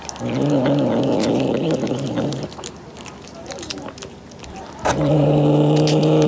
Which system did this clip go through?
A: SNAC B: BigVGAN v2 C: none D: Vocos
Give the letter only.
C